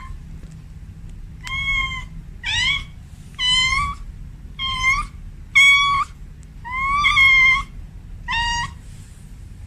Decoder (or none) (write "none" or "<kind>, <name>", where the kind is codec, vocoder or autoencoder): none